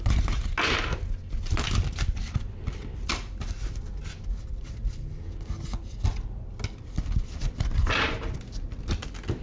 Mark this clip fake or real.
real